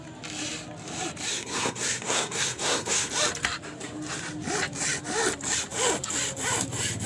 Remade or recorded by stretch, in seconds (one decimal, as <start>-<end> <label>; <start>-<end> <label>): 0.0-1.3 recorded; 1.3-3.1 remade; 3.1-7.1 recorded